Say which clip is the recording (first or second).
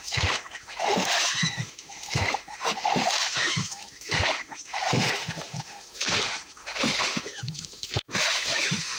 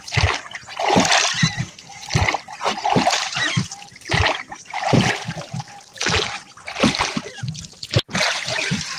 second